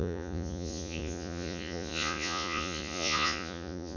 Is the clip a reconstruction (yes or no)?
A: yes